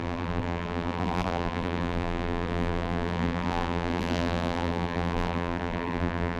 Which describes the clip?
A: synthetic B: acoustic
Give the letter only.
A